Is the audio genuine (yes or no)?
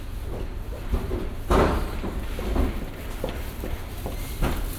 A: yes